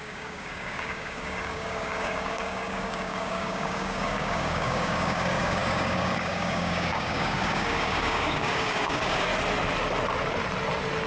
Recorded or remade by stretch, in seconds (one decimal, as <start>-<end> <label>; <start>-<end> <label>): 0.0-9.3 remade; 9.3-11.1 recorded

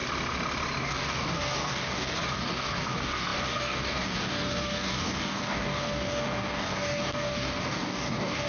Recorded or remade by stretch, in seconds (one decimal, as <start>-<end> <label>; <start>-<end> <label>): 0.0-0.8 recorded; 0.8-8.5 remade

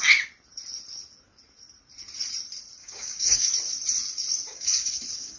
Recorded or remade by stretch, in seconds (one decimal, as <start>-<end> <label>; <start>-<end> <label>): 0.0-2.8 recorded; 2.8-3.5 remade; 3.5-4.5 recorded; 4.5-5.4 remade

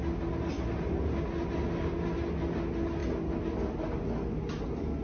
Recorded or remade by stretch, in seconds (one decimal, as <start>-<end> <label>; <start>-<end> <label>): 0.0-5.0 recorded

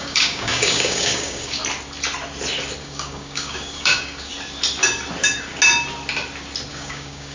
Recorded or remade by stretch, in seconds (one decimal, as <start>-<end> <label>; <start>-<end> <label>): 0.0-1.6 remade; 1.6-2.8 recorded; 2.8-4.3 remade; 4.3-6.7 recorded; 6.7-7.3 remade

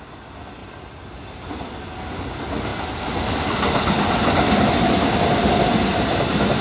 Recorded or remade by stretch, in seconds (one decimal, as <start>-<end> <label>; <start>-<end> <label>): 0.0-6.6 recorded

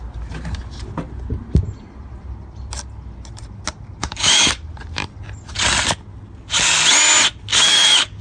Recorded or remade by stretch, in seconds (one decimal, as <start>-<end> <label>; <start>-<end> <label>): 0.0-4.0 recorded; 4.0-4.5 remade; 4.5-7.5 recorded; 7.5-8.2 remade